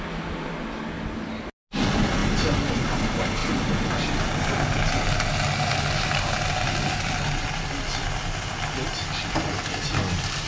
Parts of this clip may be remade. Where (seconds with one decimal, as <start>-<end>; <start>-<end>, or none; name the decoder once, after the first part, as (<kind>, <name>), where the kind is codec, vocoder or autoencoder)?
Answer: none